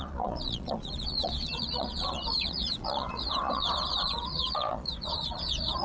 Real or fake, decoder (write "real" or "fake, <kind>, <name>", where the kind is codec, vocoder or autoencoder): fake, vocoder, Vocos